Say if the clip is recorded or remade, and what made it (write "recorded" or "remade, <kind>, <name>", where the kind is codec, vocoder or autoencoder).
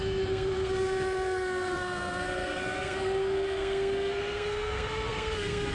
remade, codec, SNAC